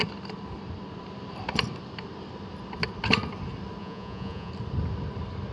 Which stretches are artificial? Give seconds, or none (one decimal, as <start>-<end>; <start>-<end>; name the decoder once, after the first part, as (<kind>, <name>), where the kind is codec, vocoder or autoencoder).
3.8-4.5 (vocoder, Vocos)